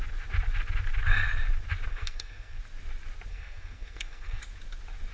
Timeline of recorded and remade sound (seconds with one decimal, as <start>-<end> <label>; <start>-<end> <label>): 0.0-1.9 recorded; 1.9-2.6 remade; 2.6-3.3 recorded; 3.3-4.4 remade; 4.4-5.1 recorded